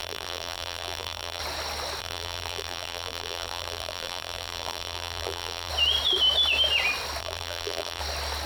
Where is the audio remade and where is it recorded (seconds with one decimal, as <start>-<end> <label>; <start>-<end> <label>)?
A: 0.0-1.4 remade; 1.4-2.0 recorded; 2.0-5.7 remade; 5.7-7.2 recorded; 7.2-8.0 remade; 8.0-8.4 recorded